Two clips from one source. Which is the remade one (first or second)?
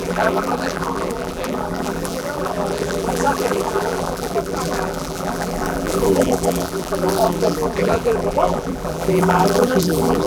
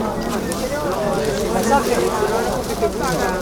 first